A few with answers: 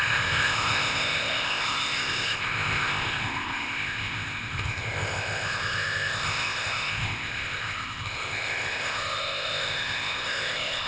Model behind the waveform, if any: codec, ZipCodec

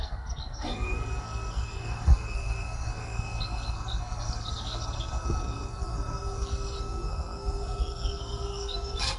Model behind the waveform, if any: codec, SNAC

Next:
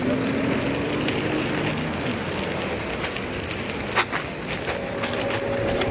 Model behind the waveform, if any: none